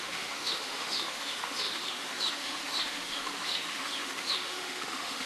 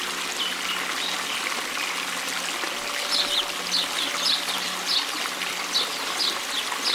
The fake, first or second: first